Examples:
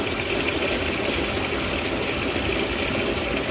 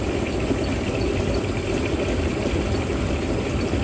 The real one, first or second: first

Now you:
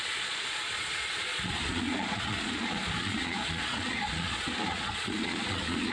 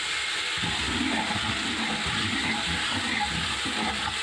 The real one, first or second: second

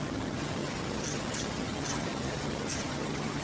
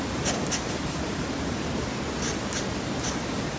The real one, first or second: second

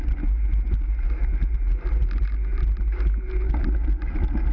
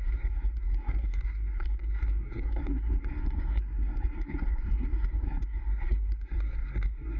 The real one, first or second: first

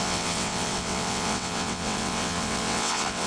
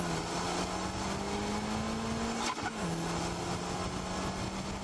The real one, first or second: second